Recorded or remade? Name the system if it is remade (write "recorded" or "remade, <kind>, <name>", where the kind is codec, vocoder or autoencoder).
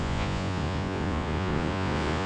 remade, vocoder, Vocos